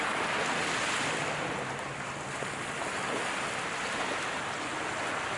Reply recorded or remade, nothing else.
recorded